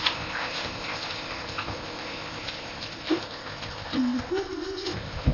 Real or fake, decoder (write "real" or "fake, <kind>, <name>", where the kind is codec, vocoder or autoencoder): fake, codec, ZipCodec